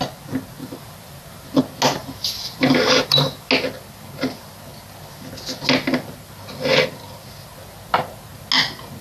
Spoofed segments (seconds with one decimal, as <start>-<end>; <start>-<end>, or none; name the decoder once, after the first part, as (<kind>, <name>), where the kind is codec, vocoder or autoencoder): 0.6-1.6 (vocoder, BigVGAN v2); 2.0-3.5